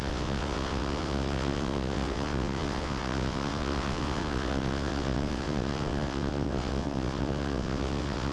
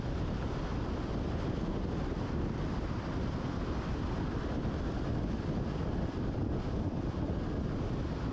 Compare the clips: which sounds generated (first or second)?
first